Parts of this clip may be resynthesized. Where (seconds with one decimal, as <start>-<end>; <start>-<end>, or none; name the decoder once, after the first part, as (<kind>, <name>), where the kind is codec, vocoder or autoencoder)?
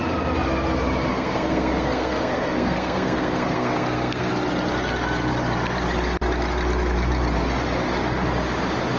1.1-4.3 (codec, SNAC)